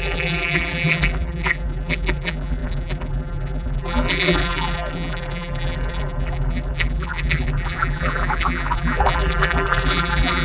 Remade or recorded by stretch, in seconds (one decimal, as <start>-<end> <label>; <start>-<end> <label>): 0.0-10.4 remade